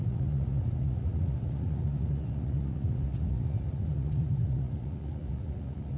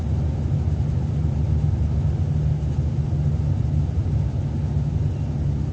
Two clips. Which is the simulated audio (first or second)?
first